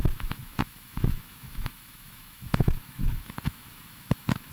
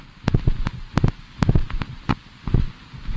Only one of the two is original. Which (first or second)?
second